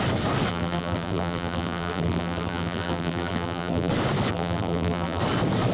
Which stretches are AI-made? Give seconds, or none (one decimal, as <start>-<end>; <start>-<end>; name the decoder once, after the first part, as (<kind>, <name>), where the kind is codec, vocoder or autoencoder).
0.5-3.9 (vocoder, BigVGAN v2); 4.3-5.2